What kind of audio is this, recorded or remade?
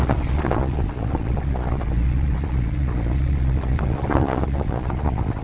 remade